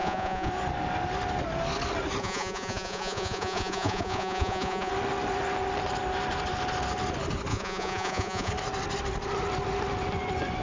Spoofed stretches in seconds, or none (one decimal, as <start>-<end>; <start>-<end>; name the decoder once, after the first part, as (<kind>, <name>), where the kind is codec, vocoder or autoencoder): 0.0-0.5 (vocoder, Vocos); 2.2-4.9; 7.5-8.5